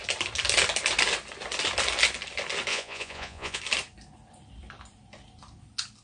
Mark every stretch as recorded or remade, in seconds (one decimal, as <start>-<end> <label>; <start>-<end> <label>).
0.0-2.7 recorded; 2.7-3.6 remade; 3.6-6.0 recorded